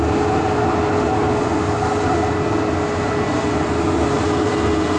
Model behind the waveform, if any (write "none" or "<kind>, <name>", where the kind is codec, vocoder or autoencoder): none